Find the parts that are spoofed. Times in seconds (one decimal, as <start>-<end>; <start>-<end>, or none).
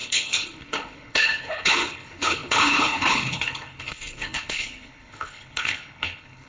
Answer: 0.0-6.5